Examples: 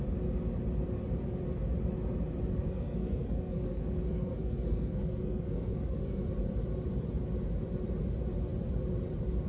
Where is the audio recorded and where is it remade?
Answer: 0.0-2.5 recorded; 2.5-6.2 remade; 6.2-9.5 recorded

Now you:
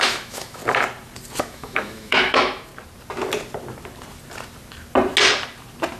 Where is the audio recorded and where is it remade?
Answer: 0.0-0.6 remade; 0.6-1.4 recorded; 1.4-2.7 remade; 2.7-6.0 recorded

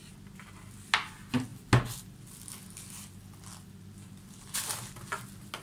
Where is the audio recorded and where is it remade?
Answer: 0.0-5.6 recorded

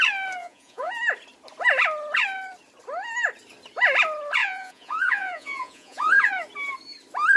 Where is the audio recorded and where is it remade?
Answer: 0.0-0.4 recorded; 0.4-0.9 remade; 0.9-4.4 recorded; 4.4-6.3 remade; 6.3-7.4 recorded